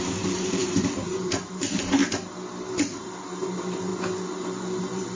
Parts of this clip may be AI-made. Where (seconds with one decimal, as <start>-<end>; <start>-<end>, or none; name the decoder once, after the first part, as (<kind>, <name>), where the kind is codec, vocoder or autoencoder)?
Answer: 0.0-2.0 (vocoder, BigVGAN v2); 2.7-3.9; 4.8-5.2